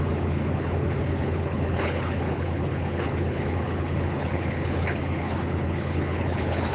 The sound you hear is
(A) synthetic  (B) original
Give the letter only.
A